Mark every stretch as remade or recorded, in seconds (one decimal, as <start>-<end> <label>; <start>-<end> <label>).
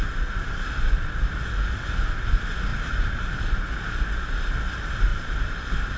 0.0-2.7 recorded; 2.7-3.6 remade; 3.6-5.1 recorded; 5.1-6.0 remade